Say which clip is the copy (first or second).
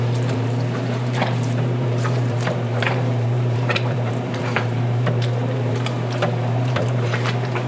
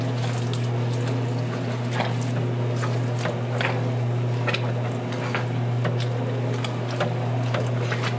first